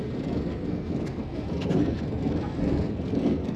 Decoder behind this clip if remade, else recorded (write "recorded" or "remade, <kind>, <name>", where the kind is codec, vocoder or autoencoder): remade, codec, SNAC